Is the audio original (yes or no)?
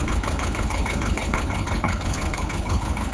no